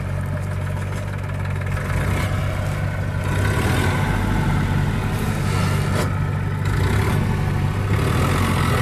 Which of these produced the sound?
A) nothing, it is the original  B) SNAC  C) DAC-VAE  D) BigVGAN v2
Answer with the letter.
A